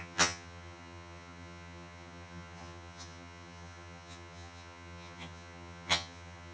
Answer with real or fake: fake